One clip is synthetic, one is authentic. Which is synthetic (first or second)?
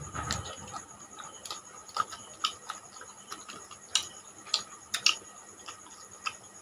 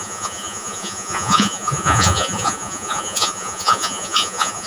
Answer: second